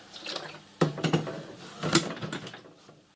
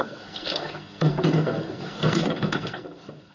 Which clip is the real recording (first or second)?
first